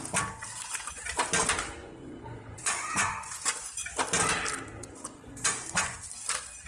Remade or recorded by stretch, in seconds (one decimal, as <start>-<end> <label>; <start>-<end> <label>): 0.0-1.8 recorded; 1.8-3.7 remade; 3.7-4.8 recorded; 4.8-6.0 remade; 6.0-6.7 recorded